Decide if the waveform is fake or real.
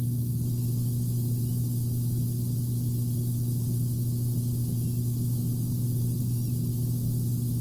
real